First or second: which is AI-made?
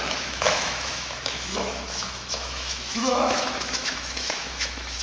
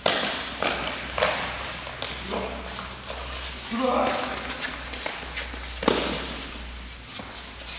first